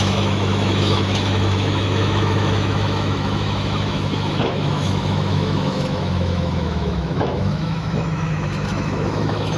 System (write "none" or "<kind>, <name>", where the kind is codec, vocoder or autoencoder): autoencoder, DAC-VAE